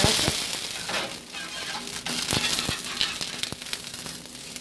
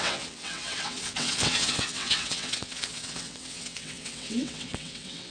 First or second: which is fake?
second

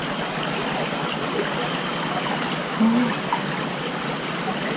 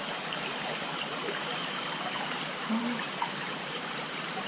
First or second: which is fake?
second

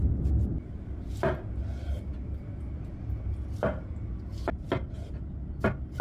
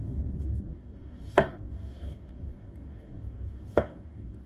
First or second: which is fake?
second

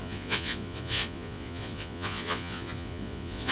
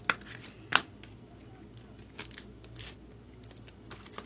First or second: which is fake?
first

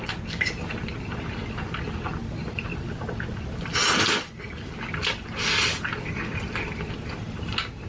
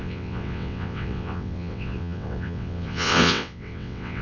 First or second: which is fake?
second